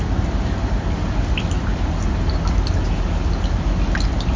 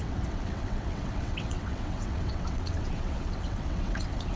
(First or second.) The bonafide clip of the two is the first